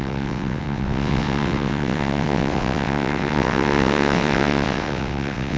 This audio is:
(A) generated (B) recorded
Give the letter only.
A